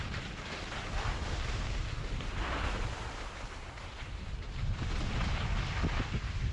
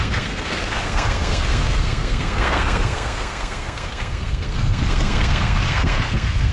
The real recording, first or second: first